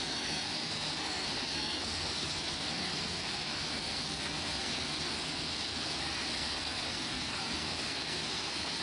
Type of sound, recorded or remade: remade